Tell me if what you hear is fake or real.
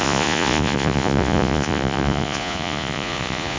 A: fake